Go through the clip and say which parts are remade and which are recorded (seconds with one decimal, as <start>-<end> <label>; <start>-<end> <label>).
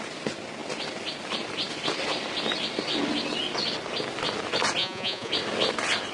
0.0-4.8 recorded; 4.8-5.3 remade; 5.3-6.1 recorded